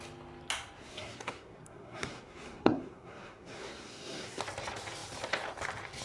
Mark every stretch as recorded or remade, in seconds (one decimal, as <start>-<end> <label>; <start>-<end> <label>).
0.0-0.8 recorded; 0.8-4.4 remade; 4.4-6.0 recorded